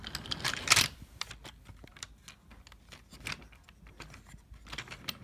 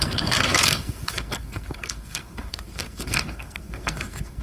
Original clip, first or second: first